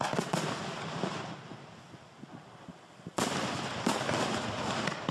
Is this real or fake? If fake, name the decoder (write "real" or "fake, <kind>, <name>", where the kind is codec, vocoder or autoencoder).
real